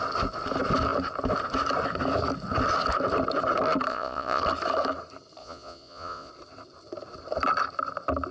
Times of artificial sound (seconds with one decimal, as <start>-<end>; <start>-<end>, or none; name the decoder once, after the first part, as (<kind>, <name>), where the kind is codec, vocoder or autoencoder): 3.9-4.4 (vocoder, Vocos); 5.4-6.3